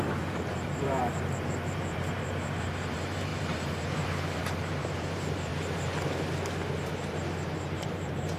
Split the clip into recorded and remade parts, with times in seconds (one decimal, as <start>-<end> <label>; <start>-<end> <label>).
0.0-5.5 remade; 5.5-6.9 recorded; 6.9-8.4 remade